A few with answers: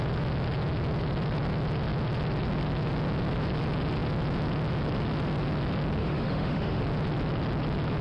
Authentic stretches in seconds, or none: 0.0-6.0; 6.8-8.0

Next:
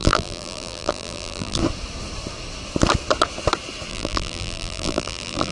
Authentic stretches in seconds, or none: 1.6-3.9